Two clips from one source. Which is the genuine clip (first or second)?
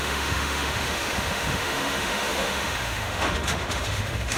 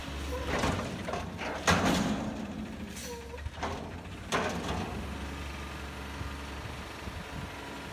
second